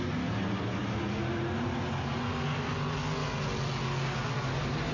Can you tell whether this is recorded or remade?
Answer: recorded